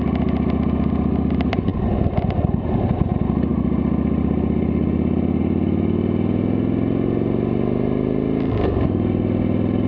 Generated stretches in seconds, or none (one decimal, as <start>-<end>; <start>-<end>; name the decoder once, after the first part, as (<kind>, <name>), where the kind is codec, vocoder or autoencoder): none